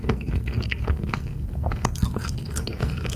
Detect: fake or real fake